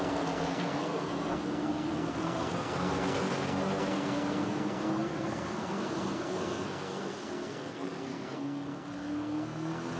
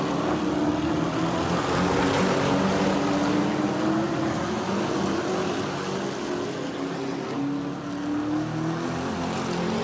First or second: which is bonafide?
second